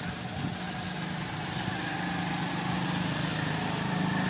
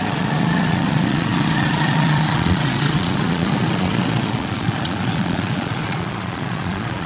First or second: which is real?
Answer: first